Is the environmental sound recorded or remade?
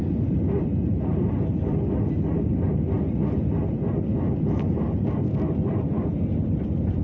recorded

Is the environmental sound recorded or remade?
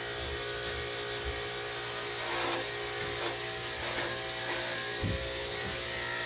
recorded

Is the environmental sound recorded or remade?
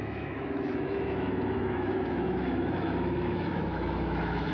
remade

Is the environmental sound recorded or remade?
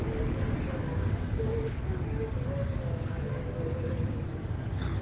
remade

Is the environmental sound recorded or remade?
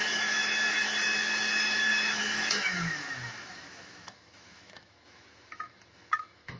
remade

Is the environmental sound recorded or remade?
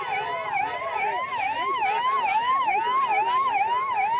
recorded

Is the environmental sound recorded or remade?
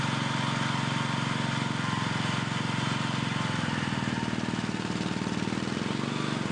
recorded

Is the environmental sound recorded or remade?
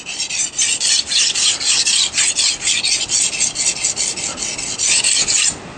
recorded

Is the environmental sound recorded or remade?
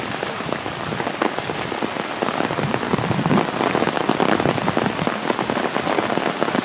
recorded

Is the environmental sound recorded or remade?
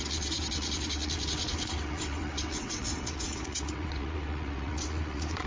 remade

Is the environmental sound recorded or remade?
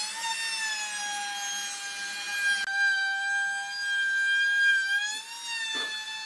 recorded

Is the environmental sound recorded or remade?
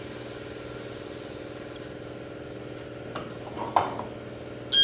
recorded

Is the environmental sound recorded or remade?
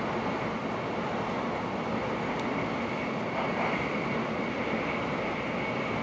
recorded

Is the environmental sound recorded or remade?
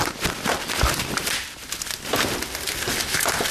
remade